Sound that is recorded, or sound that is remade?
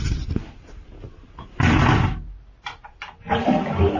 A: recorded